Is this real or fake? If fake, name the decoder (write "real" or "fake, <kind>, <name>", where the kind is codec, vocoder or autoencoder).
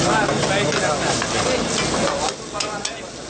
real